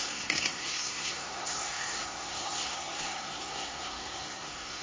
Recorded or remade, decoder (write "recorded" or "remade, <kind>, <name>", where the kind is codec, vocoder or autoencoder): remade, codec, SNAC